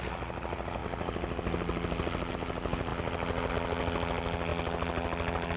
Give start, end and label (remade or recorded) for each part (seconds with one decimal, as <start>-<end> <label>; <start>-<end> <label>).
0.0-5.6 recorded